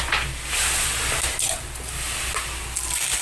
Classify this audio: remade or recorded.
recorded